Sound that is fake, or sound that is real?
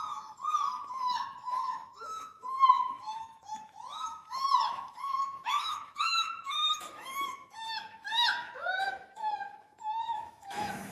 fake